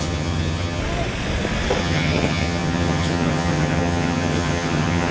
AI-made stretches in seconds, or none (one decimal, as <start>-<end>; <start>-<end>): 0.0-0.8; 1.8-5.1